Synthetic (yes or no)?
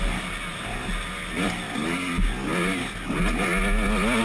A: no